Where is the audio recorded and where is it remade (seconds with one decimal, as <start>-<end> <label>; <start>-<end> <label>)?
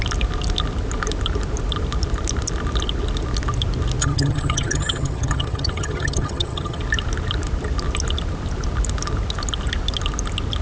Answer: 0.0-4.0 recorded; 4.0-6.8 remade; 6.8-10.6 recorded